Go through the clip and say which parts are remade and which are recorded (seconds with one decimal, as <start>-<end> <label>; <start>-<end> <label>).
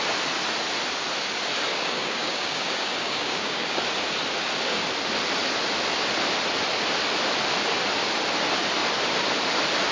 0.0-1.7 recorded; 1.7-3.8 remade; 3.8-9.9 recorded